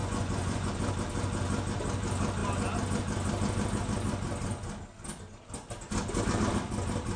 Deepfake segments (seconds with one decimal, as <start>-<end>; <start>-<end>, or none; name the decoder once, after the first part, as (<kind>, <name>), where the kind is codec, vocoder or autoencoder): 0.0-0.7 (vocoder, Vocos)